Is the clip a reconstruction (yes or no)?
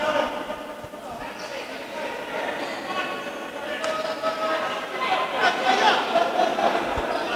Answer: no